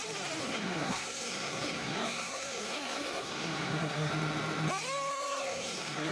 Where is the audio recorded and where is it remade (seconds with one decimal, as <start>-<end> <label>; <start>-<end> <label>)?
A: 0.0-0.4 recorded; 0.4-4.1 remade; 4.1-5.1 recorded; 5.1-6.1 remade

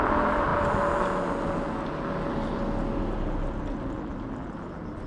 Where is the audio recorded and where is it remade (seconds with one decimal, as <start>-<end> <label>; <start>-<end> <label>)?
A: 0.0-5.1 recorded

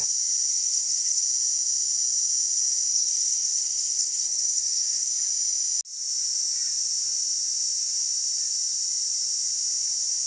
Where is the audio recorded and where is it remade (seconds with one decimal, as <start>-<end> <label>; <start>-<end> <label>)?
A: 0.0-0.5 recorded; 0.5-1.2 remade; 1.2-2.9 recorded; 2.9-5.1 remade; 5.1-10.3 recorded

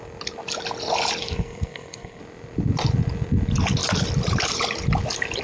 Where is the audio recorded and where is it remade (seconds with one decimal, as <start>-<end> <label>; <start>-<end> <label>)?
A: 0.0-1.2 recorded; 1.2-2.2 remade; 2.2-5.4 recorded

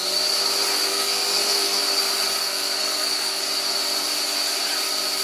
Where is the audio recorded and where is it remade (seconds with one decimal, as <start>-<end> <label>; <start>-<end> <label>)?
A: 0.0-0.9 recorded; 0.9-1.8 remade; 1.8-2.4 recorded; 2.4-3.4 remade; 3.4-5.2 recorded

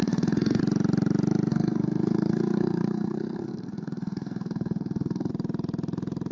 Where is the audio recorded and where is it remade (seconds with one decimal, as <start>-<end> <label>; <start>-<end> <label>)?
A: 0.0-0.6 remade; 0.6-1.5 recorded; 1.5-5.3 remade; 5.3-6.3 recorded

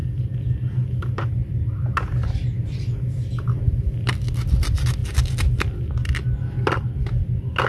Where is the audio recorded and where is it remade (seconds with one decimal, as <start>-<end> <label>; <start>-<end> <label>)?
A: 0.0-7.7 recorded

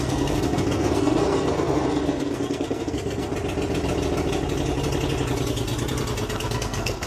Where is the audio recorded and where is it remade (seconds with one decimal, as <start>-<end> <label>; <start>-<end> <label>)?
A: 0.0-3.3 remade; 3.3-6.4 recorded; 6.4-7.1 remade